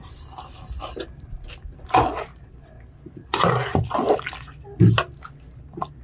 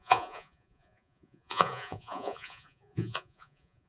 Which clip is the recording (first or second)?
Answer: first